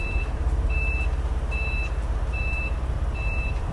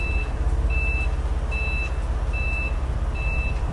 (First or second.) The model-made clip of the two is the first